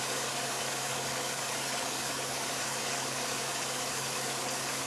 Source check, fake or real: fake